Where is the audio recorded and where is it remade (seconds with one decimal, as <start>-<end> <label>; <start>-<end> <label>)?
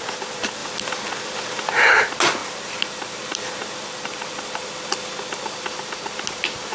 0.0-2.4 recorded; 2.4-5.1 remade; 5.1-6.7 recorded